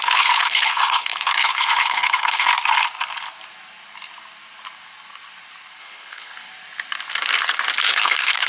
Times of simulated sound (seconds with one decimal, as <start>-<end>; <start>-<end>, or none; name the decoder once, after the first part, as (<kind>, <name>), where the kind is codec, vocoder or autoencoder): 0.0-2.5 (codec, HILCodec); 5.8-6.3; 7.8-8.5